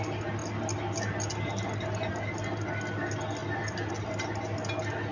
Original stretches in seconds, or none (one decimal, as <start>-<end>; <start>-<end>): 0.0-5.1